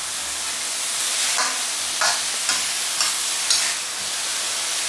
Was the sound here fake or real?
real